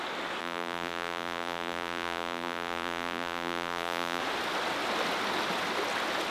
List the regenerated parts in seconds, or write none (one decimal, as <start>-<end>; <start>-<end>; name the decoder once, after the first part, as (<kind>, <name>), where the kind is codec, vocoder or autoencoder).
0.4-4.2 (vocoder, BigVGAN v2)